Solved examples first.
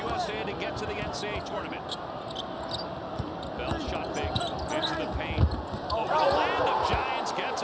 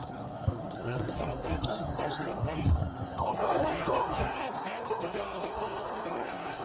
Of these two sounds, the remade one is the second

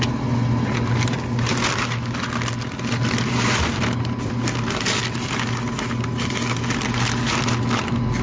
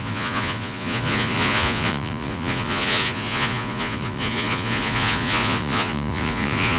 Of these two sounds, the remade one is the second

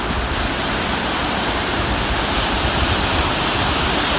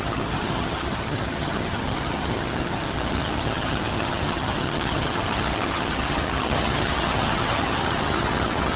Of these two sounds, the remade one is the second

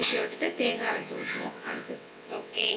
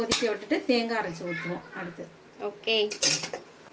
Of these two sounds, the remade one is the first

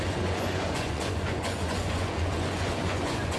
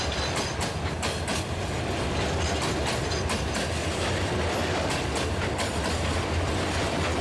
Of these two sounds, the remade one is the first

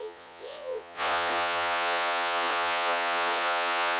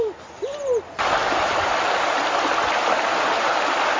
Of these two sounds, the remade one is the first